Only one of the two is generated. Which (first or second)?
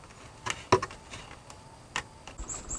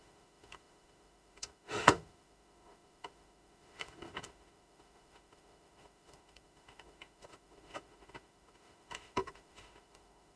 second